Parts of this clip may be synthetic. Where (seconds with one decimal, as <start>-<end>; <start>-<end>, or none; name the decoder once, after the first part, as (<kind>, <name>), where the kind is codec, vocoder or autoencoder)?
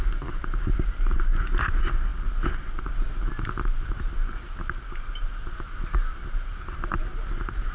none